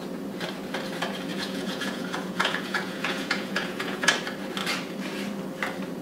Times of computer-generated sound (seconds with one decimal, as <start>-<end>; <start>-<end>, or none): 1.3-4.1